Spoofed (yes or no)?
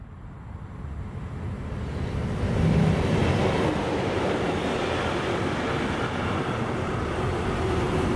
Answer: no